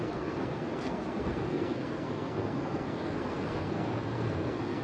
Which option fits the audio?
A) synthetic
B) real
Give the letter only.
A